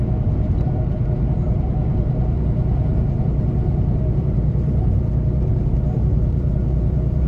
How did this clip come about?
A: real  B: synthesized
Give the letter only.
B